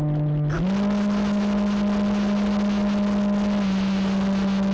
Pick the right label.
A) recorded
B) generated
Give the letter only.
A